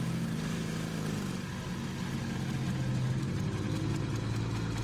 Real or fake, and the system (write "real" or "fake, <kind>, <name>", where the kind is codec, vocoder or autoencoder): real